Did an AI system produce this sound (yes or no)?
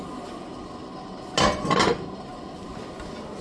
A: no